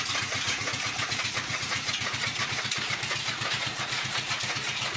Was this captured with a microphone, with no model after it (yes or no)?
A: no